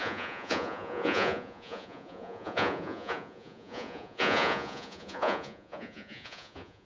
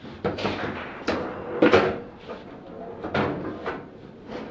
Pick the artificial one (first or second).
first